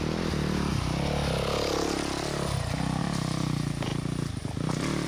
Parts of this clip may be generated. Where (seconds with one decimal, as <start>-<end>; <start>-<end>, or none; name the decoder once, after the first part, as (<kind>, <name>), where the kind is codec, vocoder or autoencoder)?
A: 0.0-0.7 (vocoder, BigVGAN v2); 3.0-5.1